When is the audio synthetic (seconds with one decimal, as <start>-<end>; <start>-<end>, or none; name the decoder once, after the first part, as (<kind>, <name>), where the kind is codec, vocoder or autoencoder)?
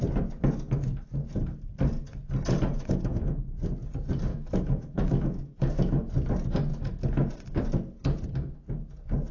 2.7-3.4 (autoencoder, DAC-VAE); 4.3-6.1; 6.7-7.3